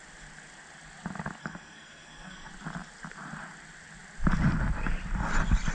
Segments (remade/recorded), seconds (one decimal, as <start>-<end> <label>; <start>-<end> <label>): 0.0-1.4 recorded; 1.4-2.5 remade; 2.5-5.7 recorded